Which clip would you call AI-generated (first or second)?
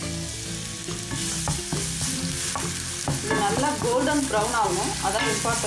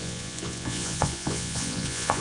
second